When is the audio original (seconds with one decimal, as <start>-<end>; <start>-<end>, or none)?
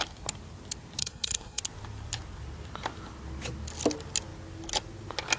0.0-1.0; 1.6-5.4